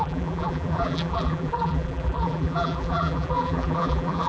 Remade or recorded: remade